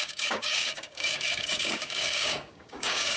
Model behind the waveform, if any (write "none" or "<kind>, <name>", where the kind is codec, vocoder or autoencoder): codec, DAC